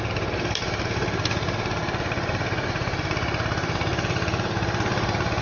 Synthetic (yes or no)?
yes